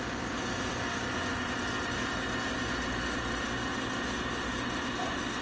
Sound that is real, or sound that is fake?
real